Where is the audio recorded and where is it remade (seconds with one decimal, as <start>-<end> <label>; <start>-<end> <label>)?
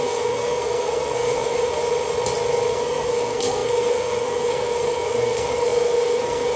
0.0-1.8 remade; 1.8-2.7 recorded; 2.7-6.6 remade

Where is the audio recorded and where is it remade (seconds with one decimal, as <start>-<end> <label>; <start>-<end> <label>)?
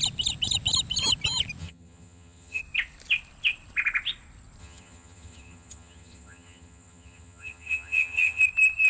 0.0-1.6 recorded; 1.6-2.6 remade; 2.6-4.6 recorded; 4.6-8.4 remade; 8.4-8.9 recorded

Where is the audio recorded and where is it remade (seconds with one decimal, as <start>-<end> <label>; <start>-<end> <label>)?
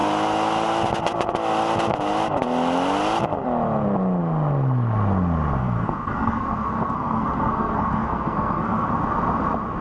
0.0-5.6 recorded; 5.6-8.9 remade; 8.9-9.8 recorded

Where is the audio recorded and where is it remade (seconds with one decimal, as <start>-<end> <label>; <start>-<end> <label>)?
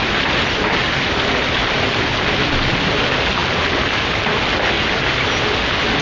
0.0-6.0 recorded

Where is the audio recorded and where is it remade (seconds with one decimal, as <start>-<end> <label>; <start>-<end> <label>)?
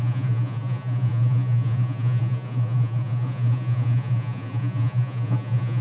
0.0-5.8 remade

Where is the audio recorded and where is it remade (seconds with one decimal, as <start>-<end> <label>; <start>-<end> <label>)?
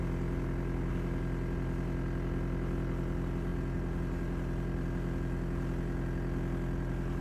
0.0-7.2 recorded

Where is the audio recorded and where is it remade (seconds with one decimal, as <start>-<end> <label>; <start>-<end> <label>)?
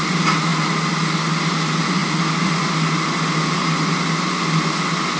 0.0-5.2 recorded